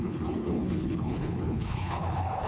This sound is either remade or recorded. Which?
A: remade